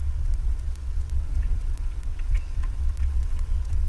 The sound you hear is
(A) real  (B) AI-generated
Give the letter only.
B